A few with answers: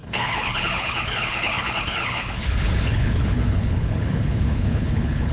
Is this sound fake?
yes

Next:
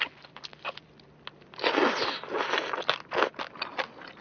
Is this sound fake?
no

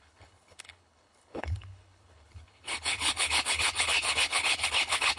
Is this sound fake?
yes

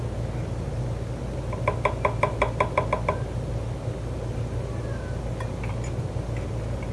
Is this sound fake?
no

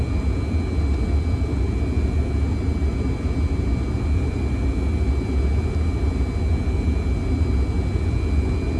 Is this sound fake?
no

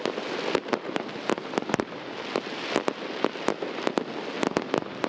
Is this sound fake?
no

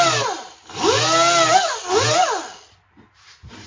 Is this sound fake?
no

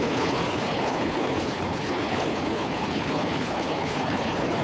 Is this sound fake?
yes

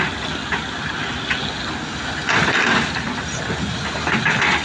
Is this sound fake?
no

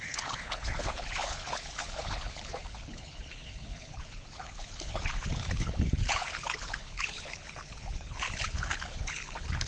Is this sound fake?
yes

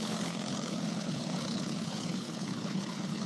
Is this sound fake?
yes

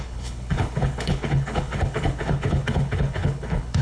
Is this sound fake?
yes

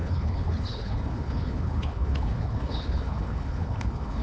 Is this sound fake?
yes